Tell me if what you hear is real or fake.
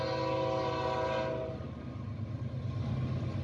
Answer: real